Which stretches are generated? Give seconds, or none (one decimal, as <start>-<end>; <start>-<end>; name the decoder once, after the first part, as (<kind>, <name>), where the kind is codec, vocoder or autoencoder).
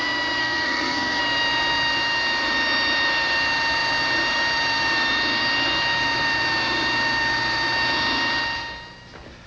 0.4-1.2 (codec, SNAC)